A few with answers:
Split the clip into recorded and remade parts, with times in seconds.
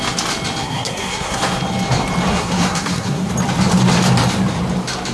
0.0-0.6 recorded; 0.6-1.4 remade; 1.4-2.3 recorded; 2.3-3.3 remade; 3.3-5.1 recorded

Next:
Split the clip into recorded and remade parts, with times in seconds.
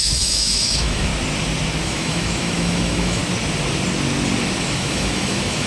0.0-1.1 remade; 1.1-1.8 recorded; 1.8-3.2 remade; 3.2-4.6 recorded; 4.6-5.7 remade